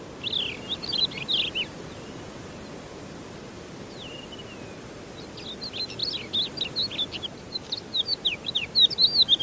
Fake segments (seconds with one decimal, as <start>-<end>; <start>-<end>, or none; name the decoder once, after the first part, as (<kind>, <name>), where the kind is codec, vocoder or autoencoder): none